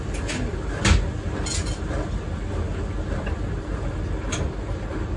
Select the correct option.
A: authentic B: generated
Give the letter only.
A